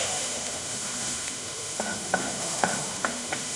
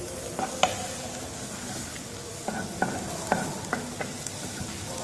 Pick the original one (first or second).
second